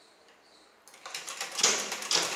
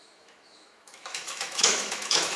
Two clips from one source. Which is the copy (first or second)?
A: second